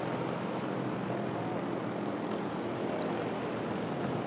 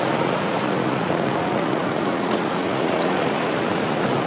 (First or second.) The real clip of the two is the first